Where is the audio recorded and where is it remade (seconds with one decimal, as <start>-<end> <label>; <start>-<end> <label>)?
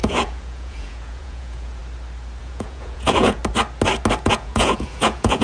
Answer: 0.0-1.8 remade; 1.8-2.4 recorded; 2.4-3.4 remade; 3.4-4.2 recorded; 4.2-5.4 remade